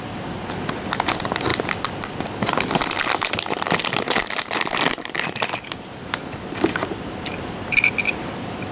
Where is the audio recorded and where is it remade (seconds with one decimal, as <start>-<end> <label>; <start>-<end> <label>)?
0.0-8.7 recorded